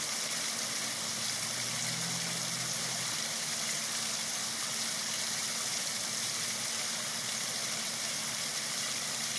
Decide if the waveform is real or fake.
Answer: real